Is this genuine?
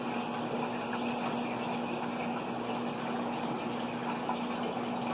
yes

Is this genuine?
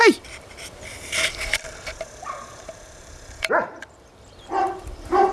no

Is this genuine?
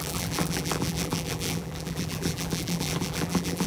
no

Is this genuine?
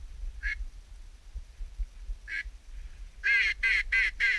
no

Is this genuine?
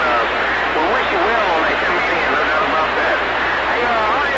yes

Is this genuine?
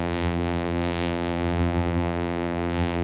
no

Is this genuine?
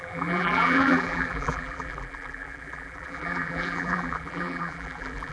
no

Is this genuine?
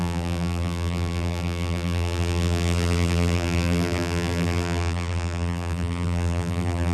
no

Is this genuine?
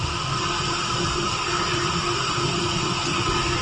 no